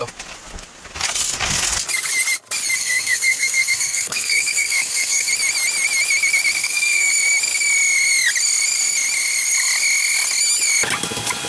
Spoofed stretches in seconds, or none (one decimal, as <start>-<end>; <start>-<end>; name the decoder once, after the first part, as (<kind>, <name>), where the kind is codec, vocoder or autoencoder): 2.8-5.3 (codec, SNAC); 6.6-7.1